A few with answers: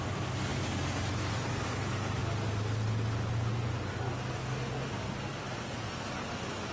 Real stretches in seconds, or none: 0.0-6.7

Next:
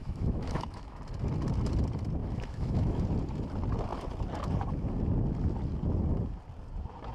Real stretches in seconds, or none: 1.0-2.2; 3.0-7.1

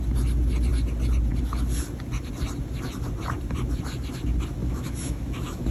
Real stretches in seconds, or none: 0.0-4.6